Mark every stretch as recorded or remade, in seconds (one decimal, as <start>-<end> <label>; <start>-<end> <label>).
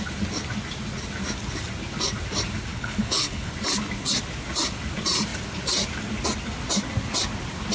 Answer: 0.0-2.7 recorded; 2.7-3.5 remade; 3.5-7.7 recorded